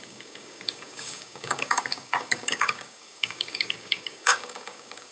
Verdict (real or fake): fake